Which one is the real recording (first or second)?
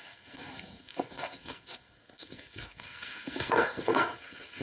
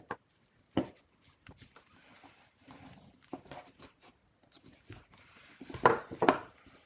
second